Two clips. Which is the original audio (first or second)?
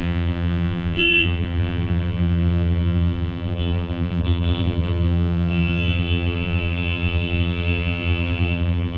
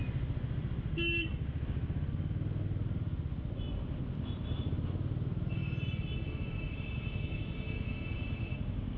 second